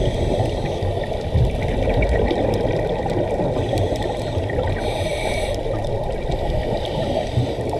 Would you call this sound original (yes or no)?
yes